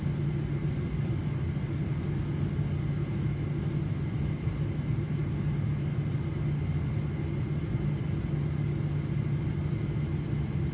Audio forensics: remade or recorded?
recorded